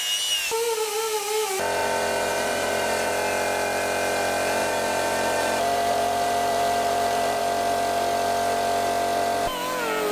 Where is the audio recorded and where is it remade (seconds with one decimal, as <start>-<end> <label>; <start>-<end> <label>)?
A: 0.0-1.8 recorded; 1.8-3.1 remade; 3.1-4.6 recorded; 4.6-7.4 remade; 7.4-10.1 recorded